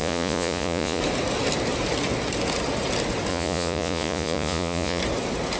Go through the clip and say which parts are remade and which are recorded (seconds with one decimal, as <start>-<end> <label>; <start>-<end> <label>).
0.0-1.0 remade; 1.0-3.3 recorded; 3.3-5.0 remade; 5.0-5.6 recorded